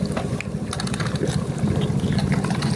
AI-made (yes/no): yes